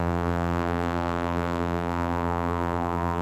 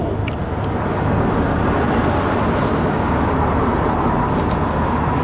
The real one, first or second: second